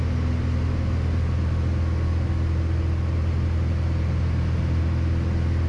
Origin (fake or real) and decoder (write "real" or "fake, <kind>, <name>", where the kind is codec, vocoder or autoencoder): real